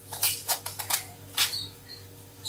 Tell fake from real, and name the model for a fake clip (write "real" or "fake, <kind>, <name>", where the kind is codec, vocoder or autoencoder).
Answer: fake, codec, DAC